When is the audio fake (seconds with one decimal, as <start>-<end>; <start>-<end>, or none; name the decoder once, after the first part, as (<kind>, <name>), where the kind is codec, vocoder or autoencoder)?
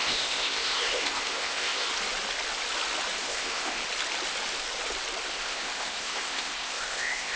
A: 0.0-1.9 (codec, ZipCodec); 3.2-3.8; 5.3-7.4